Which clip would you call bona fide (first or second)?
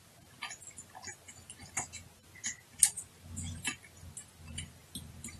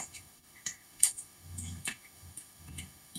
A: first